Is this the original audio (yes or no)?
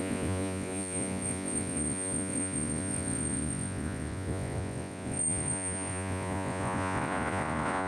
no